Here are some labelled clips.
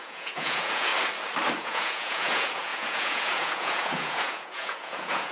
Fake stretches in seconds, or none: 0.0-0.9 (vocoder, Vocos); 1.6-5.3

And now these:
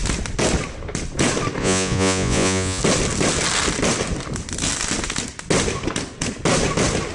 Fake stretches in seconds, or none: 1.6-2.8 (vocoder, Vocos)